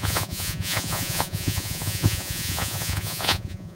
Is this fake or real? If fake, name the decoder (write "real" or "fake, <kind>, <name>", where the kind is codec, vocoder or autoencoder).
fake, vocoder, Vocos